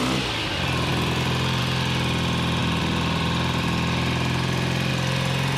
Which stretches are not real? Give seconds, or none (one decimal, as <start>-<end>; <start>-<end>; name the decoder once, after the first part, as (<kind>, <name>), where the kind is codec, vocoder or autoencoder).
none